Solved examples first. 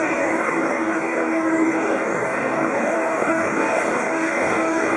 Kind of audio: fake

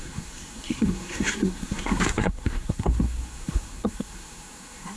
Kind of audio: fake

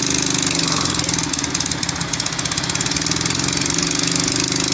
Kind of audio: real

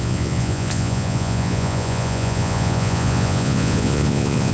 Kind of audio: fake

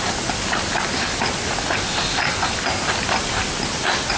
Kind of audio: real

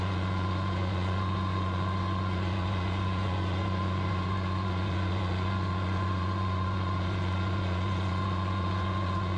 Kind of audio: fake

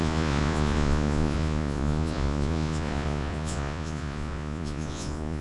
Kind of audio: fake